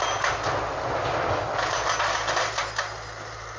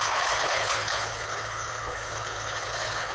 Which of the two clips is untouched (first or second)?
first